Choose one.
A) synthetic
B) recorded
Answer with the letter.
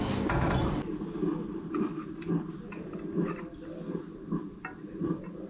B